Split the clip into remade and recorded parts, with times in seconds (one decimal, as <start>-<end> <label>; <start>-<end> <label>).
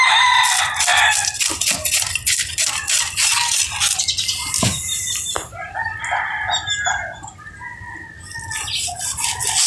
0.0-9.7 recorded